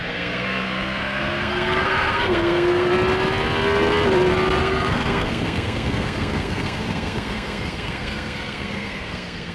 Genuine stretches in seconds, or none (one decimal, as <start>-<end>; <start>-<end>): 2.9-4.6